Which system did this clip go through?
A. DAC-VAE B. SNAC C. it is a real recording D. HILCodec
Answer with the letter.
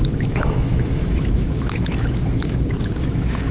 A